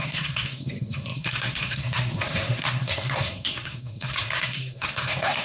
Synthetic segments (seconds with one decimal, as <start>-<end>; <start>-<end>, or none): 0.0-5.4